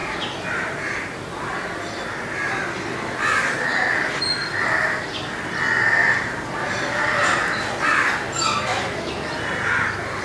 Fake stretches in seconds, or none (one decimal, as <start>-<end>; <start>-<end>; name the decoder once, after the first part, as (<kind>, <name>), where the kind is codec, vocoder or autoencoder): 8.7-9.3 (autoencoder, DAC-VAE)